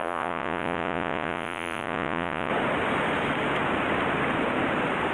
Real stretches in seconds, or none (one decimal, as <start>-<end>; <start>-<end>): 2.5-5.1